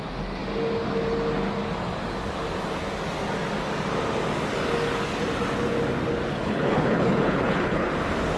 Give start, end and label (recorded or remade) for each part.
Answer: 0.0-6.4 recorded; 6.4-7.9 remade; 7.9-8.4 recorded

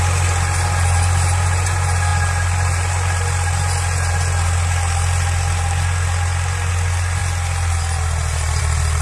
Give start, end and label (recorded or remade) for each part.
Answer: 0.0-9.0 recorded

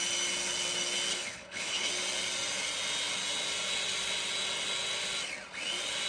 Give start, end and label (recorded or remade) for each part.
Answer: 0.0-1.1 recorded; 1.1-1.9 remade; 1.9-6.1 recorded

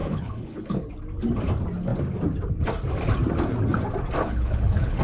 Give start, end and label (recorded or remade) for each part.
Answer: 0.0-0.9 remade; 0.9-4.2 recorded; 4.2-5.0 remade

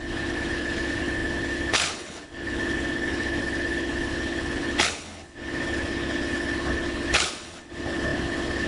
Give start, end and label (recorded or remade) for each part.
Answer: 0.0-8.7 remade